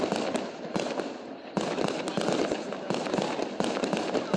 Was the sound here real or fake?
real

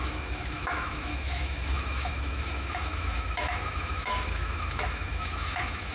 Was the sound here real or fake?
fake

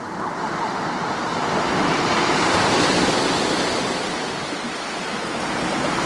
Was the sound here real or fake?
real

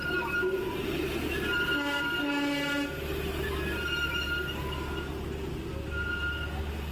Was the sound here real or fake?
real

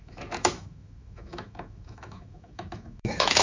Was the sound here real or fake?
fake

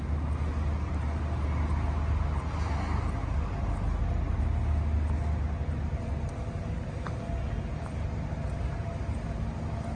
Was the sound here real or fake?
real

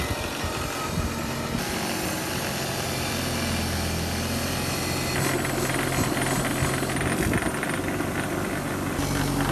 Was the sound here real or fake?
real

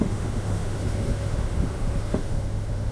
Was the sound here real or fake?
fake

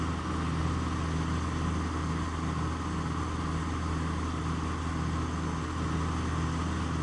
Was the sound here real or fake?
real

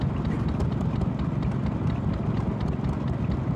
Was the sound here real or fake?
real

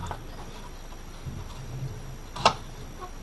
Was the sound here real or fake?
real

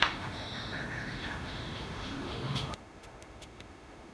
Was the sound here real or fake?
fake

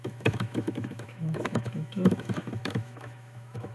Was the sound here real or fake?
fake